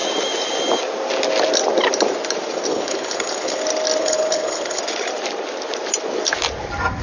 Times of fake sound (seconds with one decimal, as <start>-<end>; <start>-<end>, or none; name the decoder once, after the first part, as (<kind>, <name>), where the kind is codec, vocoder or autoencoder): 2.7-3.6 (codec, HILCodec); 4.0-4.8